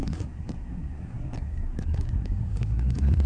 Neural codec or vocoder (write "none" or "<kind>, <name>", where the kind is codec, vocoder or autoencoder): codec, SNAC